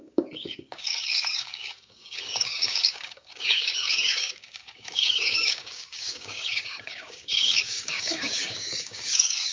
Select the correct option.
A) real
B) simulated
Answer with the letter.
B